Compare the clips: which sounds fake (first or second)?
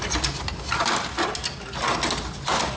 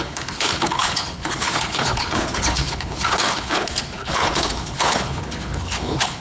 second